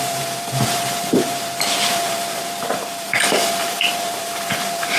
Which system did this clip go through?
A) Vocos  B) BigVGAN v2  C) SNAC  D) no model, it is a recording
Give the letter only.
B